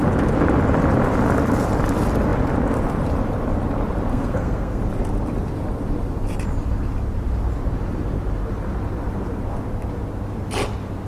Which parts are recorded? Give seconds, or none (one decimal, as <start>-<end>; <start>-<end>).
0.0-4.1; 4.8-11.1